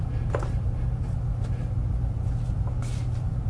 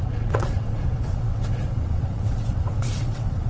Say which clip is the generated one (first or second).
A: second